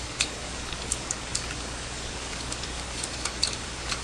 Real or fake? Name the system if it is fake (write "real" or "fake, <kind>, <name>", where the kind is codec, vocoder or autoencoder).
fake, codec, DAC